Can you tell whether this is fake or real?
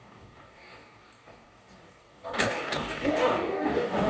fake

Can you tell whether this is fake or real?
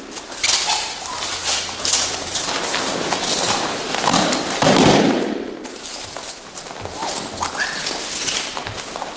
real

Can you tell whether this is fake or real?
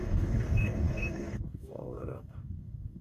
fake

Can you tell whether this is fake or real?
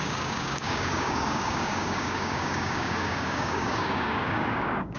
fake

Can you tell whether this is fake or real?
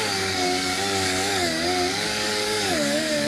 fake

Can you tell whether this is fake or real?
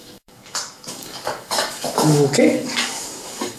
fake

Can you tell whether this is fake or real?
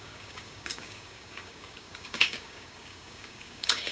fake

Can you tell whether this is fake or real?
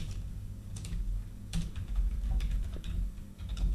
fake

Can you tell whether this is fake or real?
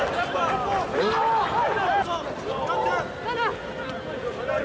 real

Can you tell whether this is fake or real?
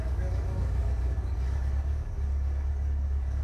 fake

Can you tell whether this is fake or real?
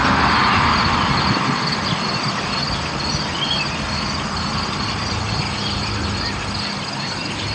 real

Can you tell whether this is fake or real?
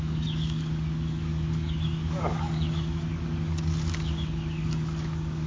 fake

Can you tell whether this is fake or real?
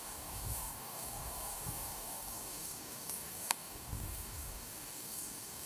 fake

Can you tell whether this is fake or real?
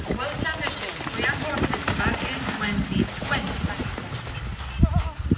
real